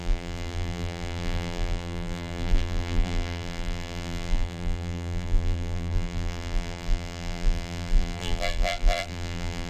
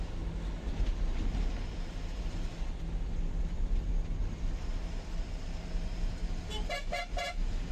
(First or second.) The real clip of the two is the second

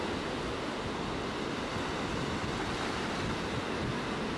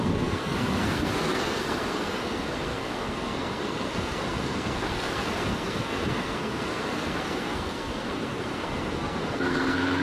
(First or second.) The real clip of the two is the first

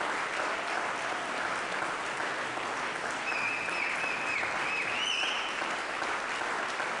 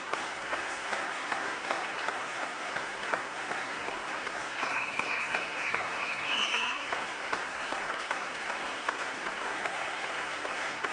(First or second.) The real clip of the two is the first